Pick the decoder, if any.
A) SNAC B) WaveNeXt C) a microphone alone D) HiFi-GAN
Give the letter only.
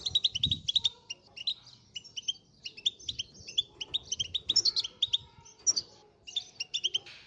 C